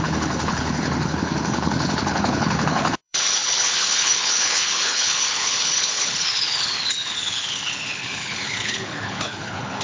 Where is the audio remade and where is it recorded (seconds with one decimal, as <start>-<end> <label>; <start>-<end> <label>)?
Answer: 0.0-9.8 remade